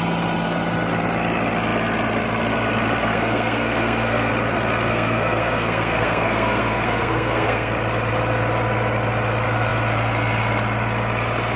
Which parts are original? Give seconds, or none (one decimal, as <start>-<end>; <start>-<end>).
0.0-3.0; 4.3-4.9; 7.7-11.6